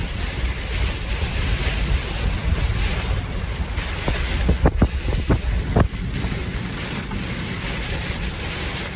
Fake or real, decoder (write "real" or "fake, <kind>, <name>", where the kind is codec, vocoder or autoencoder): real